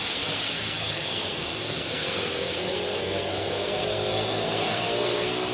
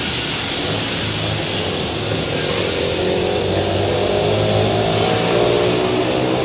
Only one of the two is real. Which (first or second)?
second